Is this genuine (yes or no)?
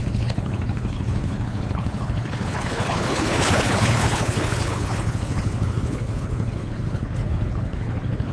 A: no